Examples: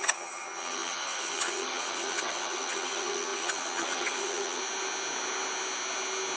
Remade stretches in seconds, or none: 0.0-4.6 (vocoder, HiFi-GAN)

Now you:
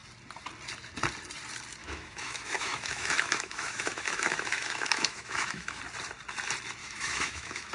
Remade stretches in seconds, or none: 1.8-5.8 (autoencoder, DAC-VAE); 6.8-7.7

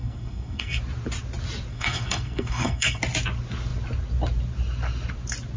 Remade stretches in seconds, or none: 0.0-0.8 (codec, SNAC); 1.7-3.0

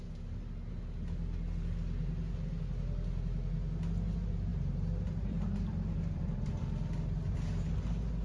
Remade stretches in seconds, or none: 4.5-6.5 (vocoder, BigVGAN v2)